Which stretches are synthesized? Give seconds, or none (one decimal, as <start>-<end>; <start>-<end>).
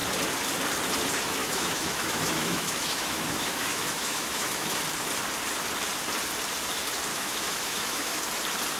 1.4-4.8; 7.1-8.2